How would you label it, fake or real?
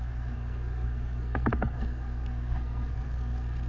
fake